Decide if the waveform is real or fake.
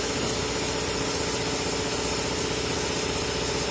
real